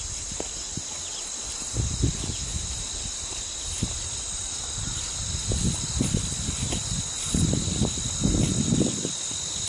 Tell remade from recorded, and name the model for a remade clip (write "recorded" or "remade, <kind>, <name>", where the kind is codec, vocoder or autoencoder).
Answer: recorded